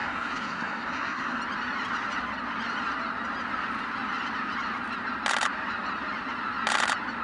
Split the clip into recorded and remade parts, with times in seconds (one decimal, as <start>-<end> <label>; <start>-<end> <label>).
0.0-1.4 remade; 1.4-7.2 recorded

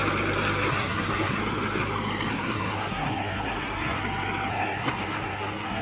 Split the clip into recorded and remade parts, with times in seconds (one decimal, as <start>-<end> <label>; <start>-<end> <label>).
0.0-0.7 recorded; 0.7-1.4 remade; 1.4-2.3 recorded; 2.3-4.0 remade; 4.0-4.5 recorded; 4.5-5.8 remade